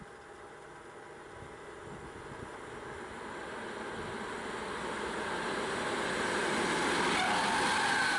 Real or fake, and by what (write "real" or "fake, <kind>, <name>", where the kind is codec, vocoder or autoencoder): real